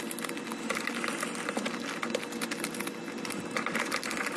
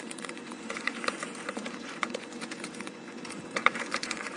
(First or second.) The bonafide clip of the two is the first